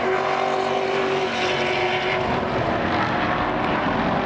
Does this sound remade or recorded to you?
recorded